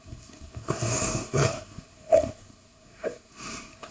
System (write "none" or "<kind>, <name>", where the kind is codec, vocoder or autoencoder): codec, SNAC